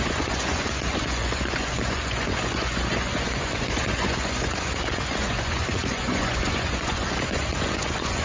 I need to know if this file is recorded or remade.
remade